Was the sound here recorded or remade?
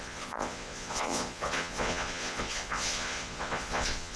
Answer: remade